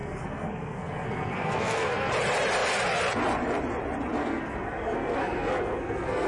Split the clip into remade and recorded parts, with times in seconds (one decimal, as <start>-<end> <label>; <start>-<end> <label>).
0.0-2.1 remade; 2.1-4.2 recorded; 4.2-6.3 remade